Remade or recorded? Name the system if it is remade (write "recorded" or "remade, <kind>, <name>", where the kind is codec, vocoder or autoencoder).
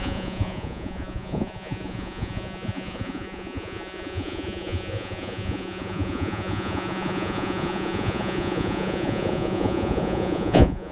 remade, vocoder, Vocos